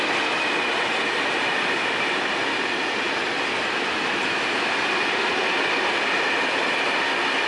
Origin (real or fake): real